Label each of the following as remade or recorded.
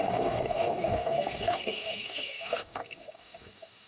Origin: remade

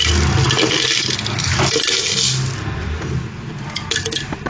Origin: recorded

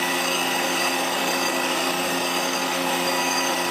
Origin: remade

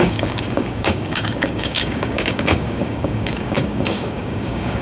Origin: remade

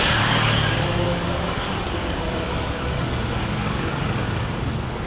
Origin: remade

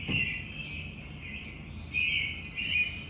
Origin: recorded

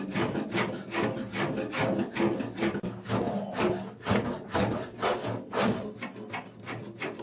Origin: recorded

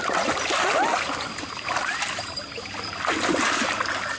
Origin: recorded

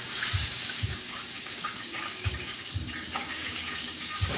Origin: remade